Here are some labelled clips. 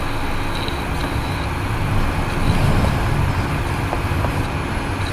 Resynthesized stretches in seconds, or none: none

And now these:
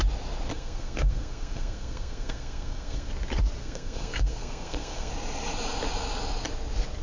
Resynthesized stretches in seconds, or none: 0.5-3.1; 3.6-5.1

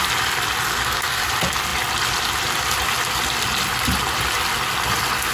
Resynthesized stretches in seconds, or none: 0.7-1.2